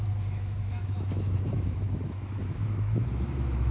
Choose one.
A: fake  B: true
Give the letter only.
A